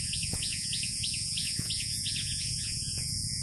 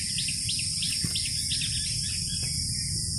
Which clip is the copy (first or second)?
first